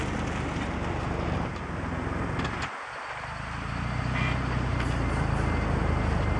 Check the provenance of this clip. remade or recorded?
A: recorded